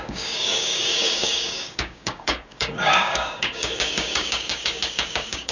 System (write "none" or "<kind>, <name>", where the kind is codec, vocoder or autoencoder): codec, DAC